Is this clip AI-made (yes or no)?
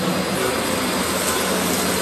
no